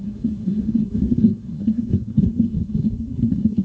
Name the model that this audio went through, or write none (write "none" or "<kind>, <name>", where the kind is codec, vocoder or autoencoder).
codec, SNAC